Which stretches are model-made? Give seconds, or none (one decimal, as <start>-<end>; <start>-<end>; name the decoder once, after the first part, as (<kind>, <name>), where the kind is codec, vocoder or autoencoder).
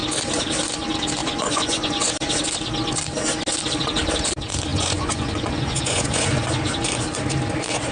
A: 1.2-2.1 (vocoder, Vocos); 4.7-7.0